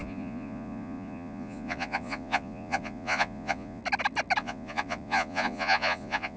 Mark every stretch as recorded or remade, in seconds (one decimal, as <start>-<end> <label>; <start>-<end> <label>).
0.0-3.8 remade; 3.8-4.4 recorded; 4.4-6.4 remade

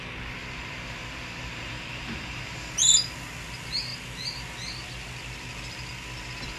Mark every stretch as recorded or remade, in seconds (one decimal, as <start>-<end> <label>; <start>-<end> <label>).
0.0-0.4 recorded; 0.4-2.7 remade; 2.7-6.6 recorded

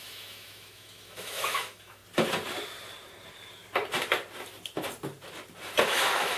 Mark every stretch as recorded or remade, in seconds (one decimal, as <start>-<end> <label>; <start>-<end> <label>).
0.0-2.0 remade; 2.0-5.8 recorded; 5.8-6.4 remade

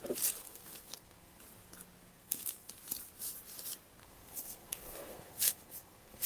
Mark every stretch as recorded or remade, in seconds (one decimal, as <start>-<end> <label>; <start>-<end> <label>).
0.0-0.4 recorded; 0.4-1.4 remade; 1.4-2.1 recorded; 2.1-2.7 remade; 2.7-4.0 recorded; 4.0-6.3 remade

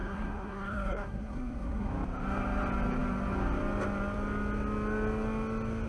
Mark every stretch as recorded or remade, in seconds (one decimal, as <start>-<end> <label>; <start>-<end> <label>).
0.0-1.9 remade; 1.9-5.9 recorded

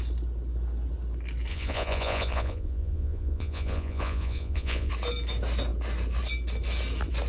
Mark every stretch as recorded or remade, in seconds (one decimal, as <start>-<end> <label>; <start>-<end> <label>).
0.0-1.5 recorded; 1.5-4.9 remade; 4.9-7.3 recorded